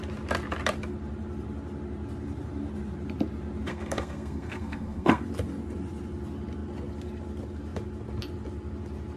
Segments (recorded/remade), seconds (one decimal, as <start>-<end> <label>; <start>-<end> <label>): 0.0-3.7 recorded; 3.7-5.2 remade; 5.2-9.2 recorded